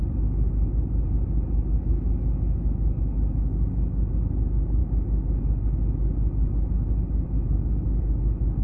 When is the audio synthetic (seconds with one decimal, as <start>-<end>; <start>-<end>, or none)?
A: none